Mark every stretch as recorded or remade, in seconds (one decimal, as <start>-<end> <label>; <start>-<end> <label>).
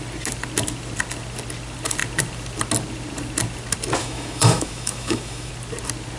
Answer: 0.0-4.0 recorded; 4.0-5.5 remade; 5.5-6.2 recorded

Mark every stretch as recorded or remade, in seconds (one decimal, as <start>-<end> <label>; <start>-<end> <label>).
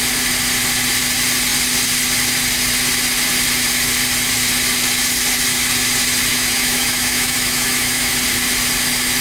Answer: 0.0-6.3 recorded; 6.3-8.1 remade; 8.1-9.2 recorded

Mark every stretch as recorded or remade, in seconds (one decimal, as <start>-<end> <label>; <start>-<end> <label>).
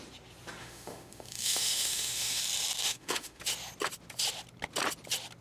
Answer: 0.0-0.6 recorded; 0.6-2.4 remade; 2.4-2.8 recorded; 2.8-3.4 remade; 3.4-5.4 recorded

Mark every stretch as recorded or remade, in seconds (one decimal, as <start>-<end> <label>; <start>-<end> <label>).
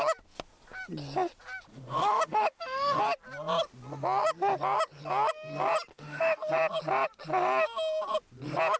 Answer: 0.0-1.7 recorded; 1.7-3.0 remade; 3.0-5.9 recorded; 5.9-6.5 remade; 6.5-8.8 recorded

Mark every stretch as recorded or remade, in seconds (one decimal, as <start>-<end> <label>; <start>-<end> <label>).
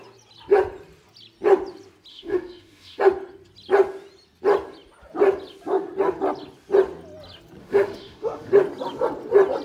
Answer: 0.0-2.1 recorded; 2.1-3.0 remade; 3.0-7.6 recorded; 7.6-8.5 remade; 8.5-9.6 recorded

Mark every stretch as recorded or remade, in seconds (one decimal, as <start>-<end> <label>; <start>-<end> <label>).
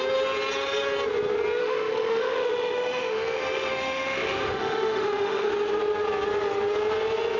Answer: 0.0-1.6 recorded; 1.6-5.5 remade; 5.5-7.4 recorded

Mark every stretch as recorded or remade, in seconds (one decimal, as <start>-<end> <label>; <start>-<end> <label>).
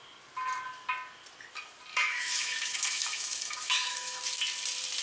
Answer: 0.0-1.9 recorded; 1.9-4.2 remade; 4.2-5.0 recorded